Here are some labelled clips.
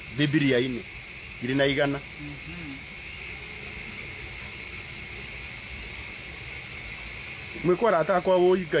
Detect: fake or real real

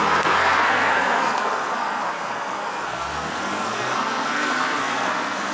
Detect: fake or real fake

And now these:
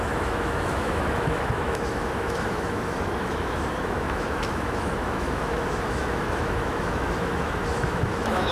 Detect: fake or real fake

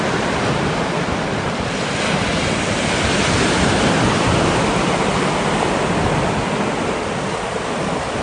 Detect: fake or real real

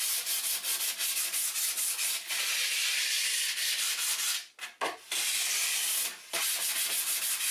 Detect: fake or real real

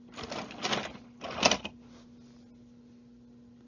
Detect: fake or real real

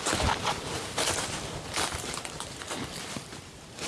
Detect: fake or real fake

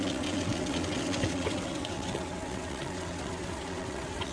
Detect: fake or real fake